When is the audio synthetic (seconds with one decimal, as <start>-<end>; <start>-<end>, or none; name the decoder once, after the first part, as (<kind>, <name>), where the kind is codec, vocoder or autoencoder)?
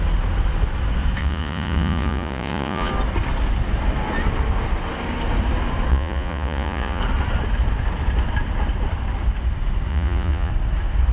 1.2-2.9 (vocoder, Vocos); 5.9-7.0; 9.9-10.5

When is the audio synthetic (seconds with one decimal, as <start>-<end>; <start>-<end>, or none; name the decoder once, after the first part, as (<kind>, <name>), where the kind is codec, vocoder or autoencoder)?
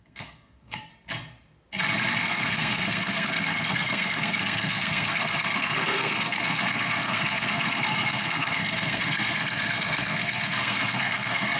0.0-0.9 (codec, SNAC); 2.2-11.6